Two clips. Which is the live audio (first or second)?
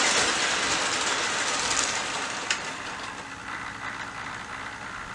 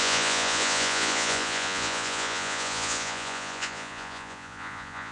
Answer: first